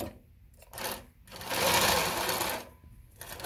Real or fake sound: real